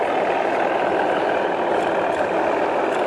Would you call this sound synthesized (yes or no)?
no